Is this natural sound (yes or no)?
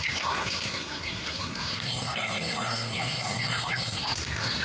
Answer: no